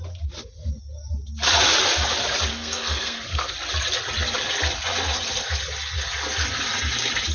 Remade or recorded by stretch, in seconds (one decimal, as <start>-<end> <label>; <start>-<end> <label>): 0.0-2.5 recorded; 2.5-3.5 remade; 3.5-7.3 recorded